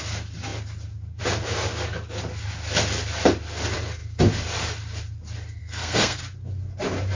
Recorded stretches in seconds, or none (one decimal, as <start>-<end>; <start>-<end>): 0.0-5.6; 6.2-7.1